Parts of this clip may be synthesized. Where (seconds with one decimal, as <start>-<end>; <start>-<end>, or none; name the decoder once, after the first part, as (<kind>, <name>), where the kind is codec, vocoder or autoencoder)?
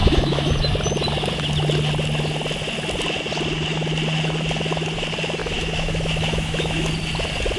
0.0-0.5 (autoencoder, DAC-VAE); 5.4-6.9